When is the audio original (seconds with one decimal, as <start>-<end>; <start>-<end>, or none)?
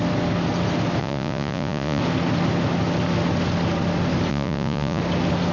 0.0-1.0; 2.0-4.3; 5.0-5.5